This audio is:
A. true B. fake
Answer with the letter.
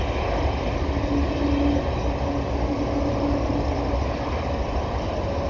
A